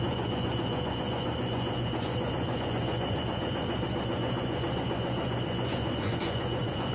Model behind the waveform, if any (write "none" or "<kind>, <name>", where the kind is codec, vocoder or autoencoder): vocoder, Vocos